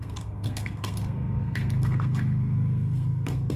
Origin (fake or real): fake